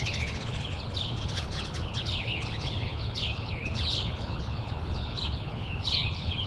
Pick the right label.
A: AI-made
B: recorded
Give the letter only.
A